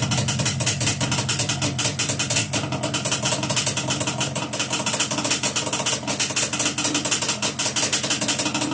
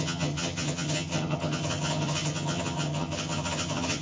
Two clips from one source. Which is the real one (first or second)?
first